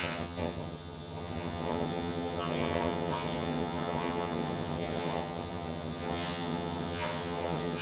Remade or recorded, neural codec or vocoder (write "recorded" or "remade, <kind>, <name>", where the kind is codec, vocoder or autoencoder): remade, vocoder, HiFi-GAN